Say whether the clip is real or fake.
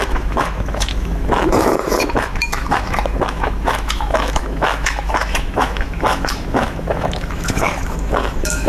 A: fake